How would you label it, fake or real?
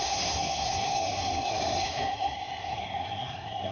fake